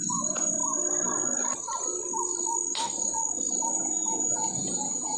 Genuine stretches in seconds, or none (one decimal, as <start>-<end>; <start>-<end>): 0.6-3.7